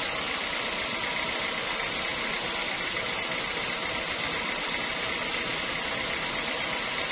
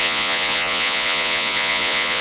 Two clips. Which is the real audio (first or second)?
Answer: first